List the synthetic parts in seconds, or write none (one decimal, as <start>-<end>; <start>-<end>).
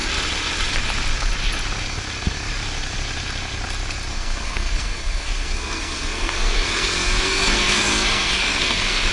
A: 4.1-9.1